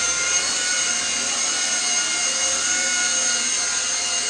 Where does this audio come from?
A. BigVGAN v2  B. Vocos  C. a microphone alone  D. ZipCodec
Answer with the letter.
A